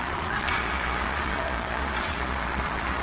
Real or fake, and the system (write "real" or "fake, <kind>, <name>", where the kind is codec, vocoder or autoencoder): fake, vocoder, Vocos